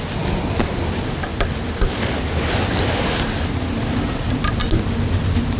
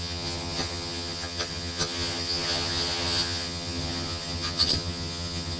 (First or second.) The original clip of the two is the first